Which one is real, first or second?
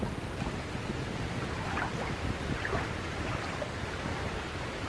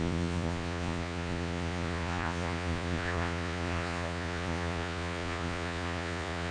first